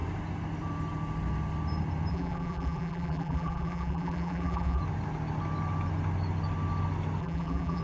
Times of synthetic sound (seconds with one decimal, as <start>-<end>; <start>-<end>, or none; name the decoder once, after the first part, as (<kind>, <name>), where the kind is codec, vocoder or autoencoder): 2.1-4.8 (vocoder, BigVGAN v2); 7.2-7.8